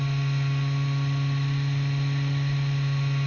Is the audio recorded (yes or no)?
yes